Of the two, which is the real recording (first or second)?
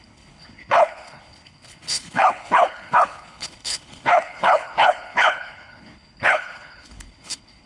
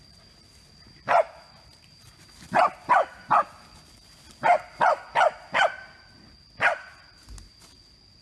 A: second